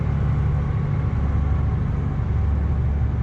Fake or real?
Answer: real